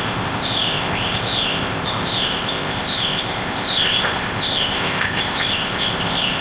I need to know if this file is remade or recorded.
remade